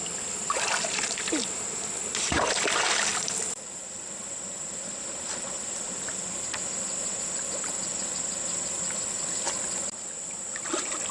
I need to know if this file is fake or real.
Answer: real